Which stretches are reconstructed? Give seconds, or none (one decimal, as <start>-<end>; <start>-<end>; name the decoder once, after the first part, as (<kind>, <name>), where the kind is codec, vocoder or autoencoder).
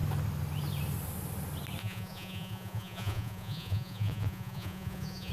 1.8-5.3 (vocoder, Vocos)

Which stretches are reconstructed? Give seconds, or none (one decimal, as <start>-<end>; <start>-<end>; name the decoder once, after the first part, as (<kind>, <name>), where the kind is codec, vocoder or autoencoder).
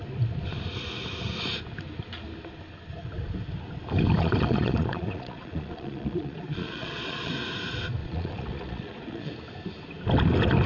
4.2-7.3 (vocoder, Vocos); 8.0-9.3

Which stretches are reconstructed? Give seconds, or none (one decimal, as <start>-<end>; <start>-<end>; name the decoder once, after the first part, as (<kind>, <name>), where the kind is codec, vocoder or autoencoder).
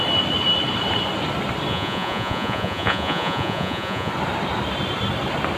1.7-4.1 (vocoder, Vocos)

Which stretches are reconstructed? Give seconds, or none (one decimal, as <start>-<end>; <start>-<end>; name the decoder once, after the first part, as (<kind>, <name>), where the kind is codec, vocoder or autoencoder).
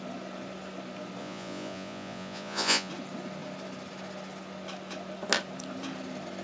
1.2-2.9 (vocoder, Vocos)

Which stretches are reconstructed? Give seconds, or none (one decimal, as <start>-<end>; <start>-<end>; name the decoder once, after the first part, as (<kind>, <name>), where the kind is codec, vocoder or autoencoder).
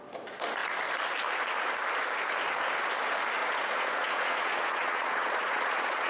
3.4-6.1 (vocoder, Vocos)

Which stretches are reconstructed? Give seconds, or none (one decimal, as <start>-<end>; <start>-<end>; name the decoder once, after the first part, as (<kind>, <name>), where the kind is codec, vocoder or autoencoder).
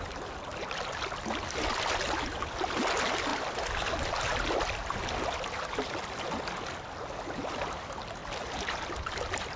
none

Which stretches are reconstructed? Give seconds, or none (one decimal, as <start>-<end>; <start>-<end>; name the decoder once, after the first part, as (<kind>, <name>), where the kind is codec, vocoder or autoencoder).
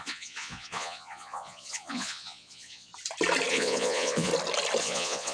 0.0-2.9 (vocoder, Vocos); 3.5-4.3; 4.8-5.3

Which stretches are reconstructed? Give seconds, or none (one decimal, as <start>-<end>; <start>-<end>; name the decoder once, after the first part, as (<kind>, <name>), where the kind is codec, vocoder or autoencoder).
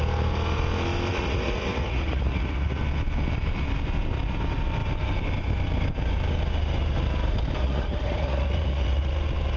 1.1-2.8 (vocoder, Vocos); 7.6-9.1